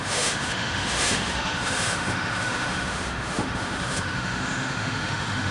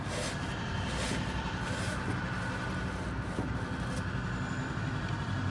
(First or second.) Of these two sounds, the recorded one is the second